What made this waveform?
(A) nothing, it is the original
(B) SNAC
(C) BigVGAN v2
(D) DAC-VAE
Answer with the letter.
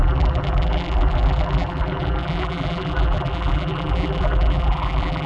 C